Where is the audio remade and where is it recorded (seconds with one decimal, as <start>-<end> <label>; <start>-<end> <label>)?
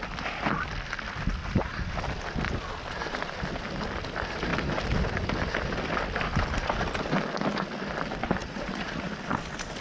0.0-1.4 recorded; 1.4-1.9 remade; 1.9-8.4 recorded; 8.4-9.1 remade; 9.1-9.8 recorded